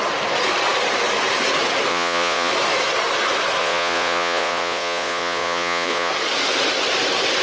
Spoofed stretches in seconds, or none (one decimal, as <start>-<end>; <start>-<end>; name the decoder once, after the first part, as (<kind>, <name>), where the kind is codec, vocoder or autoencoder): 1.9-2.5 (vocoder, Vocos); 3.6-6.1